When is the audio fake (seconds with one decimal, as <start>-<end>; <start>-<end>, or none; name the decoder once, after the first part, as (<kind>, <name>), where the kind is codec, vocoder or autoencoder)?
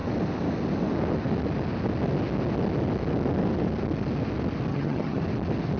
4.7-5.2 (vocoder, HiFi-GAN)